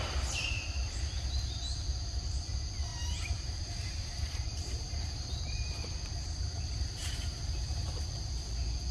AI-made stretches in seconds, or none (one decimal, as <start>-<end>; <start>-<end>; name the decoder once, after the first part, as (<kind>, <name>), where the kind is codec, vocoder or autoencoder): 2.9-7.5 (vocoder, BigVGAN v2)